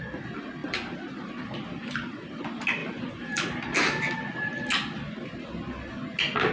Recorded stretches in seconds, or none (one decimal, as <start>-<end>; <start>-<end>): 0.0-0.6; 2.4-2.8; 3.6-6.5